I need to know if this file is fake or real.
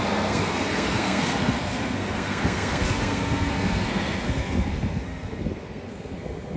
fake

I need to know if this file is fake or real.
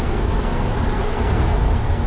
fake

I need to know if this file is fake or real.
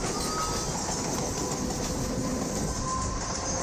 real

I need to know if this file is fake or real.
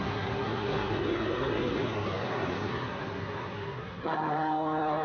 fake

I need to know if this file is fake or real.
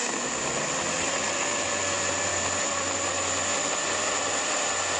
real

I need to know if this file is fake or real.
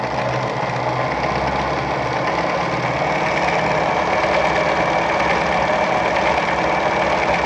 real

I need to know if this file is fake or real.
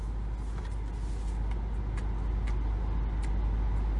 real